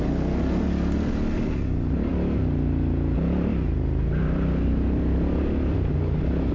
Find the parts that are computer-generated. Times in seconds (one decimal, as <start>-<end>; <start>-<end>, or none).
none